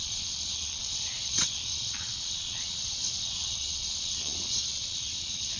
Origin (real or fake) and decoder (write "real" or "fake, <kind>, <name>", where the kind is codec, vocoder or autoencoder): fake, vocoder, WaveNeXt